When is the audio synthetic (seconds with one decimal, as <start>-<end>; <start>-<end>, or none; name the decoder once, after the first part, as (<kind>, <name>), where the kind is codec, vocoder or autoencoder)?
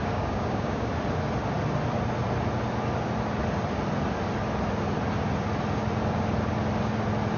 0.0-0.9 (codec, DAC)